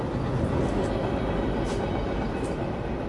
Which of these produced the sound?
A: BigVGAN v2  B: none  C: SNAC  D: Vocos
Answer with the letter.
B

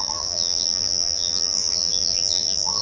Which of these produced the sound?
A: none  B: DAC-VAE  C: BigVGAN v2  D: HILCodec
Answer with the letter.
C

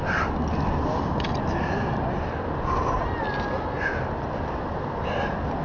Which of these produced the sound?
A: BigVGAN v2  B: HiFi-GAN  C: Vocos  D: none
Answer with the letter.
D